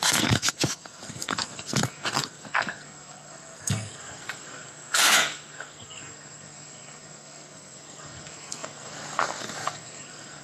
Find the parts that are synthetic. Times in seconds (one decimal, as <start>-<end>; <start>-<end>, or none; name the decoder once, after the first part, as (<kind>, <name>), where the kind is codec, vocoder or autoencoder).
0.0-10.4 (codec, SNAC)